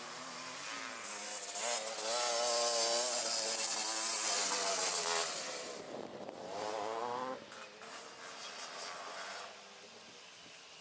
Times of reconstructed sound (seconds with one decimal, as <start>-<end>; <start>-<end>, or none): 4.8-8.1